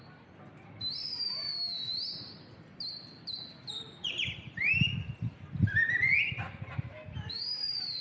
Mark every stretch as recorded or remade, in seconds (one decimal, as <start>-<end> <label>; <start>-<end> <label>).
0.0-1.5 remade; 1.5-3.5 recorded; 3.5-8.0 remade